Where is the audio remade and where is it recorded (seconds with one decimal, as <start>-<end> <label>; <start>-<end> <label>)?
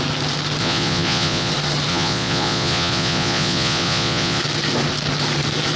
0.0-0.6 recorded; 0.6-1.5 remade; 1.5-1.9 recorded; 1.9-4.4 remade; 4.4-5.8 recorded